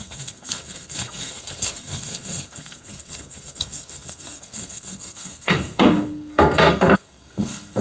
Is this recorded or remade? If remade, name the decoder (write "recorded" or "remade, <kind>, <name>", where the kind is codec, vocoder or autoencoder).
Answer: remade, codec, SNAC